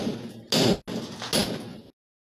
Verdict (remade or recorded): recorded